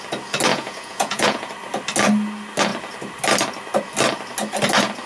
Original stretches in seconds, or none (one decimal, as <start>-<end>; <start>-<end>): 0.0-0.5; 1.5-5.1